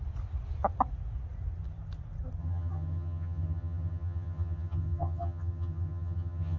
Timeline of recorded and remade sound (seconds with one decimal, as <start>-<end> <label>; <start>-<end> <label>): 0.0-2.4 recorded; 2.4-6.6 remade